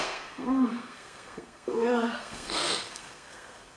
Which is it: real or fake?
fake